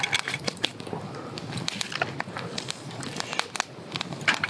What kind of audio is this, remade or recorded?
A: recorded